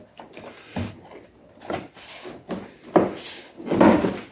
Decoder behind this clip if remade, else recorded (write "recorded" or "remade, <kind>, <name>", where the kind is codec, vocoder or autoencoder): recorded